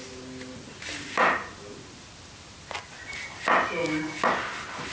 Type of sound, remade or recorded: recorded